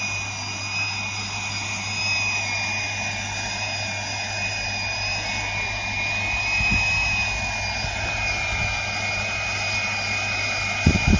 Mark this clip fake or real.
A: real